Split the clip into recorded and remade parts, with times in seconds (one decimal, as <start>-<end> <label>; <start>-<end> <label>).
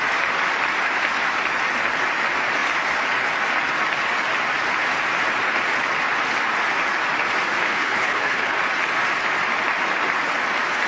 0.0-7.6 recorded; 7.6-8.6 remade; 8.6-10.9 recorded